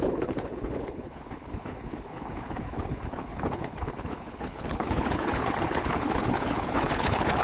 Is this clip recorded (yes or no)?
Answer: no